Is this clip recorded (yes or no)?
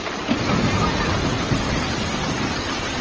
yes